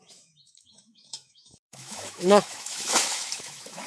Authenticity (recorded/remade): remade